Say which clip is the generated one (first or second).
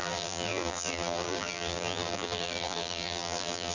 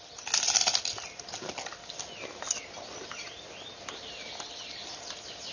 first